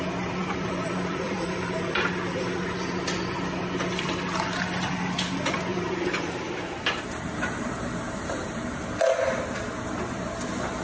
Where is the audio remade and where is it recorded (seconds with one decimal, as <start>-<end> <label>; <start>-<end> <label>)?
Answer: 0.0-0.4 recorded; 0.4-2.1 remade; 2.1-5.7 recorded; 5.7-8.8 remade; 8.8-10.8 recorded